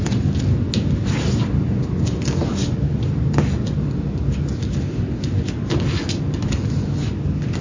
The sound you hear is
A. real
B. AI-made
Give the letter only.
A